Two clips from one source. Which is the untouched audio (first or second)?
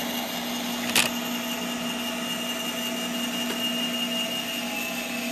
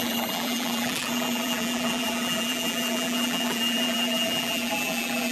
first